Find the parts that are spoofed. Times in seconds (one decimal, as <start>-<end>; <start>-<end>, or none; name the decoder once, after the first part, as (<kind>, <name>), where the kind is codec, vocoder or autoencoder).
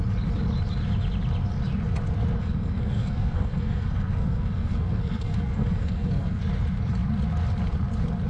2.4-6.4 (codec, SNAC)